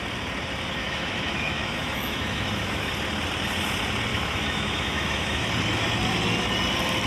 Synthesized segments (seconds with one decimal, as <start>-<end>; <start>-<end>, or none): 0.8-2.9; 4.1-5.4

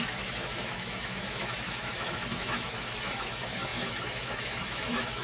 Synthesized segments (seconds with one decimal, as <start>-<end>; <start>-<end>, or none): 0.0-5.2

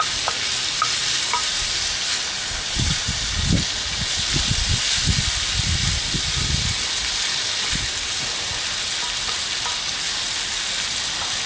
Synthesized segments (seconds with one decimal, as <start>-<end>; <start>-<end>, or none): none

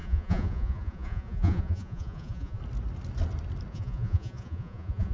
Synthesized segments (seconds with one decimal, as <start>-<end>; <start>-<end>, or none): 0.0-2.6; 3.7-5.1